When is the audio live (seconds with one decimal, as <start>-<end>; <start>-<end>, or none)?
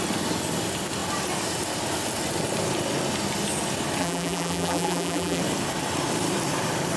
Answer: 0.0-4.0; 5.4-7.0